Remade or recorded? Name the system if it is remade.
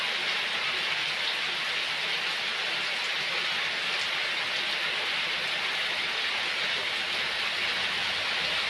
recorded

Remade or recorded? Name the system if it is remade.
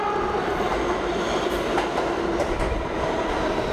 recorded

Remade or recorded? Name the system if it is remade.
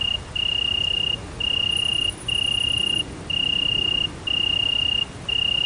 recorded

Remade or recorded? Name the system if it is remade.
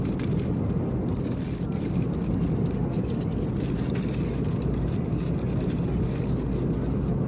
recorded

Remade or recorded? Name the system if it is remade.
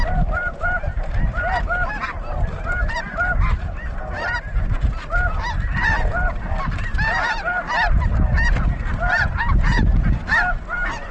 recorded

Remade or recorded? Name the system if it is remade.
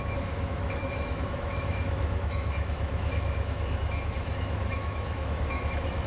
remade, autoencoder, DAC-VAE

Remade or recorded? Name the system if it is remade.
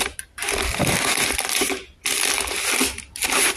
recorded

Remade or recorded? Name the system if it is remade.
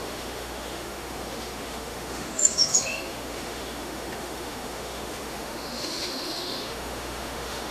remade, autoencoder, DAC-VAE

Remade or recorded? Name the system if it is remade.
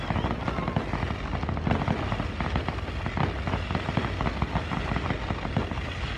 recorded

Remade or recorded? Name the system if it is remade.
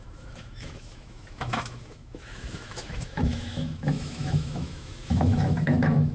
remade, autoencoder, DAC-VAE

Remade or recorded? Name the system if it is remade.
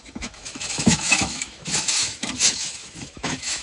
remade, autoencoder, DAC-VAE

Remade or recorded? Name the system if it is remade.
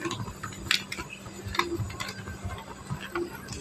recorded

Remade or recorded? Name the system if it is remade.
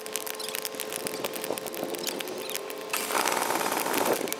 recorded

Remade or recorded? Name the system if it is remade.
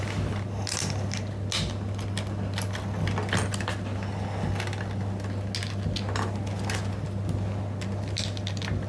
recorded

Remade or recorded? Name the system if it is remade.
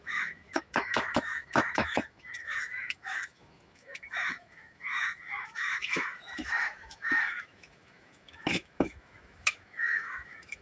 remade, autoencoder, DAC-VAE